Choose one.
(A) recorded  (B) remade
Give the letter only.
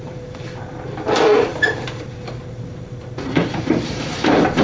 B